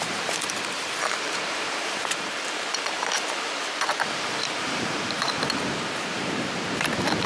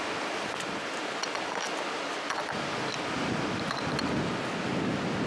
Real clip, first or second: second